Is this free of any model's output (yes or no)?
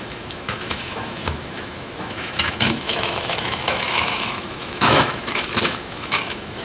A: no